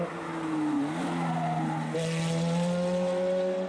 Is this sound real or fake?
real